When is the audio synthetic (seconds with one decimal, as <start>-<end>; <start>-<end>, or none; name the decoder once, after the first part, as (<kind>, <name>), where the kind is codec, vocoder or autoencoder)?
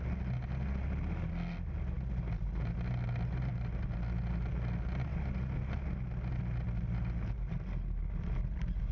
3.5-4.0 (vocoder, BigVGAN v2)